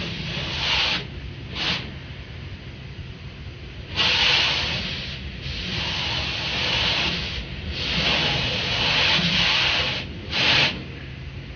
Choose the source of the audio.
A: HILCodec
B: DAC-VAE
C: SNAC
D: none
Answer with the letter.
D